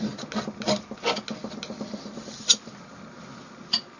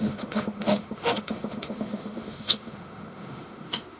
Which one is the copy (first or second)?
second